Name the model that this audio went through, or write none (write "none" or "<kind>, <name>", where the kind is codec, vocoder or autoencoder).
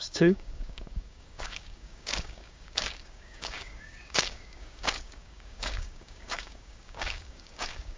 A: codec, DAC